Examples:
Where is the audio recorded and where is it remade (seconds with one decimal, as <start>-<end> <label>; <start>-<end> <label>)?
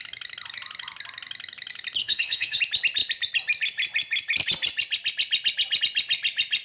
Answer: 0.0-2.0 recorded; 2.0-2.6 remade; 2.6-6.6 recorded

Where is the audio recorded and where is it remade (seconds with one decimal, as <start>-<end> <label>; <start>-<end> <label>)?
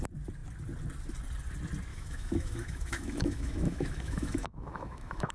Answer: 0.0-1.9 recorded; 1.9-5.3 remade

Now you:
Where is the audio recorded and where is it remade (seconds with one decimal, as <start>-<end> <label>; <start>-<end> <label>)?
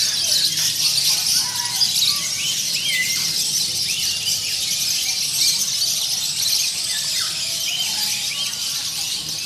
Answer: 0.0-9.5 recorded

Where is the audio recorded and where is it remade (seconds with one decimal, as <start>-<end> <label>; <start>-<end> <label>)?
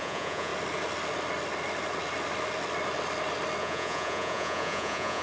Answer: 0.0-0.5 remade; 0.5-3.6 recorded; 3.6-5.2 remade